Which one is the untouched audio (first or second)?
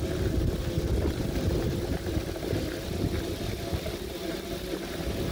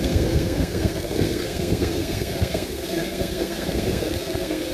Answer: first